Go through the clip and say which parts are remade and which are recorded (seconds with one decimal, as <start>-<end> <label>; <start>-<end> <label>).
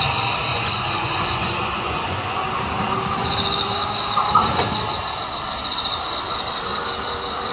0.0-0.5 recorded; 0.5-2.4 remade; 2.4-7.5 recorded